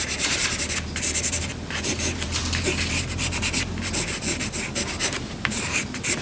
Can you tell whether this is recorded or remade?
remade